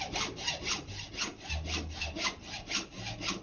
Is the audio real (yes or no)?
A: yes